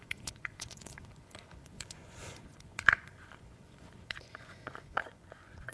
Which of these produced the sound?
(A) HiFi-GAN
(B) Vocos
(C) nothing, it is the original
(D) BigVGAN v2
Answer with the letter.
B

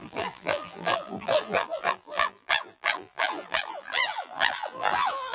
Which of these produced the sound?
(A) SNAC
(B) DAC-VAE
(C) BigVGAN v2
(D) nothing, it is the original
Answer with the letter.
C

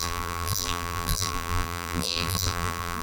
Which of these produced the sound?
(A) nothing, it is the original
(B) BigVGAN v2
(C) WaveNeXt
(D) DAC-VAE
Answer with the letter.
B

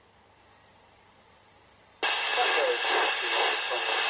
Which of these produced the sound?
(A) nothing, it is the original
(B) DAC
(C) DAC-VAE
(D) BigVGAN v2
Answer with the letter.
A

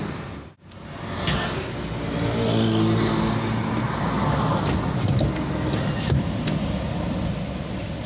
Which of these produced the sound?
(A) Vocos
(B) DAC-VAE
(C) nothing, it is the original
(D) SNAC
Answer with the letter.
C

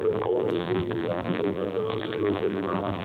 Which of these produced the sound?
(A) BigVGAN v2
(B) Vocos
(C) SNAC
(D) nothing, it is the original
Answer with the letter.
A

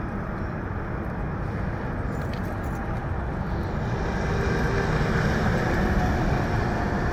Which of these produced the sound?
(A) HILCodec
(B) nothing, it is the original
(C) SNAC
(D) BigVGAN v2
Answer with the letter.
B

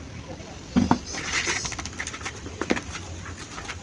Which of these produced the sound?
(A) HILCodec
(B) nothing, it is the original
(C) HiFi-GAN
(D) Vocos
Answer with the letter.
B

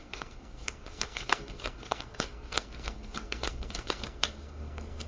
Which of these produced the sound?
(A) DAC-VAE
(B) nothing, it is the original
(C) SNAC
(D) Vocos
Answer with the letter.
C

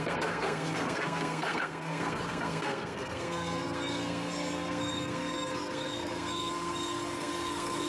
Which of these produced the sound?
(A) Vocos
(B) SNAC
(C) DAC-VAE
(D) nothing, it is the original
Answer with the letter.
B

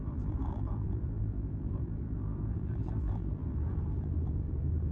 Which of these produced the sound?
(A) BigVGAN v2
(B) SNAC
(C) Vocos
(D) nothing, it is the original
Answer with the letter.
A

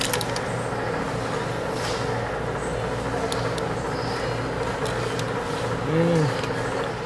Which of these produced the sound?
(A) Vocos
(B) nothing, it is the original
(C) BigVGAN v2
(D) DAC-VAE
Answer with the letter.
B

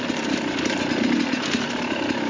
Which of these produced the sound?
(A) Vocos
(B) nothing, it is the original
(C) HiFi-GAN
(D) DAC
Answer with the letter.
B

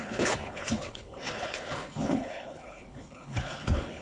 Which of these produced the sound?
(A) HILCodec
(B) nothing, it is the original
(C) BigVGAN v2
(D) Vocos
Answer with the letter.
A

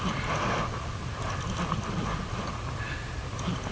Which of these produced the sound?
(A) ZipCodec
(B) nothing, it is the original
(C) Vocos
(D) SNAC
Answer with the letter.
B